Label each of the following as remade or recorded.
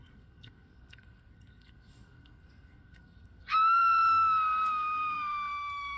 remade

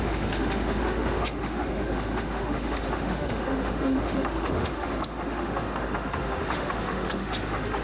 remade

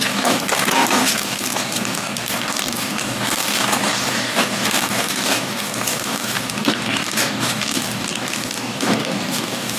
remade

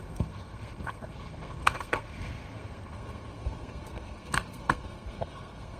remade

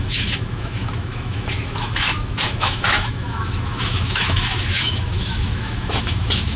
remade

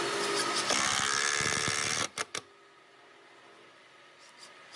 recorded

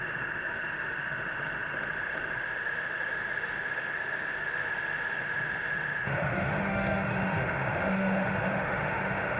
remade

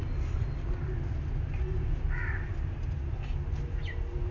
recorded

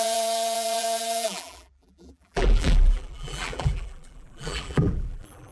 remade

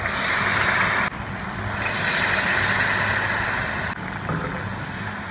recorded